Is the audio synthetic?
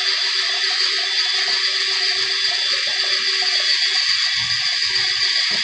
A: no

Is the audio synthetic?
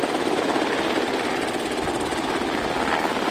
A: no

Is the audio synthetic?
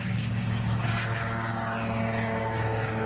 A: yes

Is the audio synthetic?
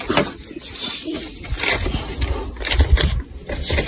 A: no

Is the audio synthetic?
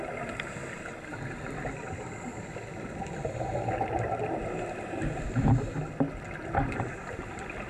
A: no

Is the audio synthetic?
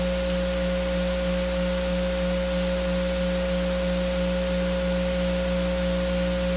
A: no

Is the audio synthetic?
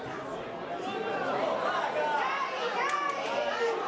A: no